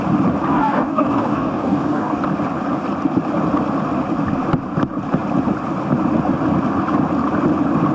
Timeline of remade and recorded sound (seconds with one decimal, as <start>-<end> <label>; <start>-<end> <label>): 0.0-0.5 recorded; 0.5-2.2 remade; 2.2-7.9 recorded